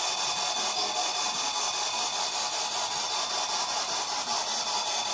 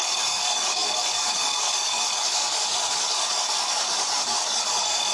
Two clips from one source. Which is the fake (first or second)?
second